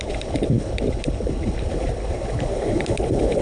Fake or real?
fake